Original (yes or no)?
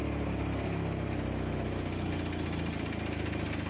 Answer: yes